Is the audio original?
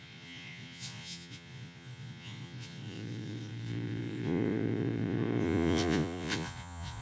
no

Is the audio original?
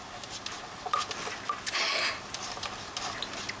yes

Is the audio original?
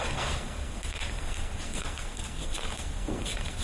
no